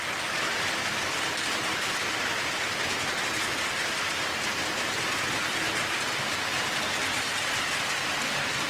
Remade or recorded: recorded